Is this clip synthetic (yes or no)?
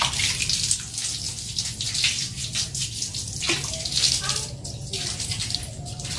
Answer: no